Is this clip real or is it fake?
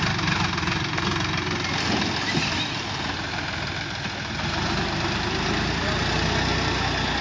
real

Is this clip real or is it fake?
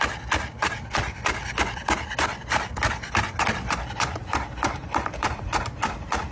real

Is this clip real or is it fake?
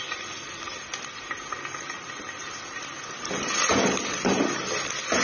real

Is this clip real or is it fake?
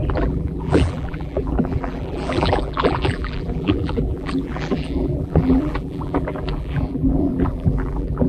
fake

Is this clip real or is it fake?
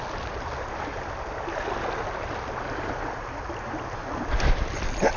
real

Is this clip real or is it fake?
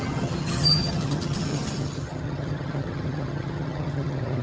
fake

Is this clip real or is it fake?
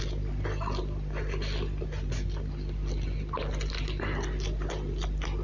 real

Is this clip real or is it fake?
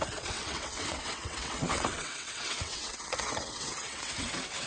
fake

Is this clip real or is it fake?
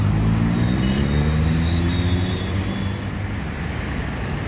real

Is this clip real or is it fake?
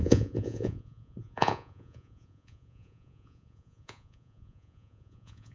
fake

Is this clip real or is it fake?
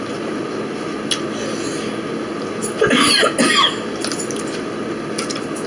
real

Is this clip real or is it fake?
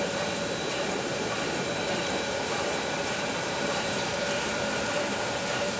fake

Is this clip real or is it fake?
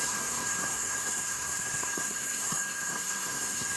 fake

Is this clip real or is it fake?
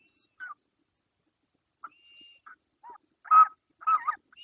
real